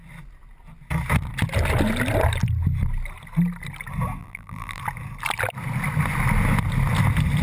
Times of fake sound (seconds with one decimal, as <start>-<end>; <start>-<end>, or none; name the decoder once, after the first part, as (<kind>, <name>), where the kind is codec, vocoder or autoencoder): 4.2-4.8 (vocoder, BigVGAN v2)